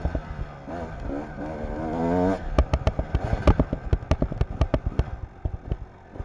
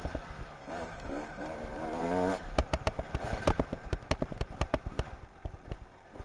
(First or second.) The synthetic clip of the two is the second